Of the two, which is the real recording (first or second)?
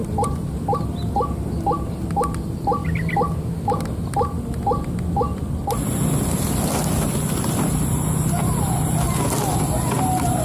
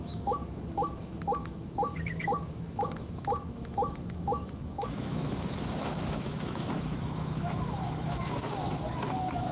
first